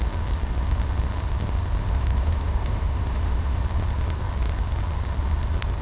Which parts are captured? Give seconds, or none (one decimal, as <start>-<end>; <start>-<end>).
0.0-1.8; 3.6-5.8